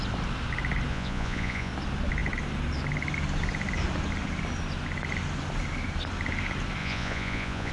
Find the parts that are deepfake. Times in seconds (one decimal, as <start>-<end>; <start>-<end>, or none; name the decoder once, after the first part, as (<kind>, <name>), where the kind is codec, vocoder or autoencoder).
0.9-1.7 (vocoder, Vocos); 6.8-7.7